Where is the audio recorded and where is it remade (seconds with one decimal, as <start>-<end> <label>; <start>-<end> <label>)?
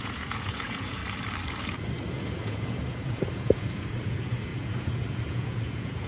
0.0-1.0 remade; 1.0-2.1 recorded; 2.1-6.1 remade